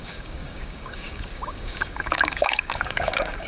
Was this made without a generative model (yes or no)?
no